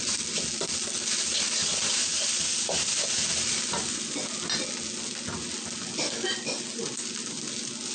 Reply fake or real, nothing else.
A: real